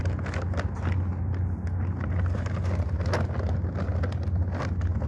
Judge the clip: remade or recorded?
recorded